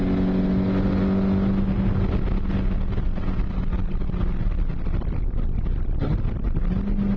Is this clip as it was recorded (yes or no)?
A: yes